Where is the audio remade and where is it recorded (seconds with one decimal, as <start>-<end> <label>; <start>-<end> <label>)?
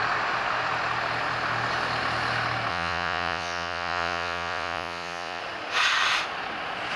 0.0-2.7 recorded; 2.7-5.4 remade; 5.4-7.0 recorded